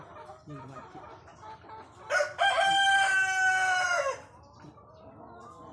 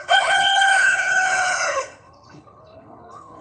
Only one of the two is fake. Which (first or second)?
second